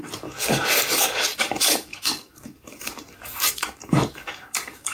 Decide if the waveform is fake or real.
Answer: fake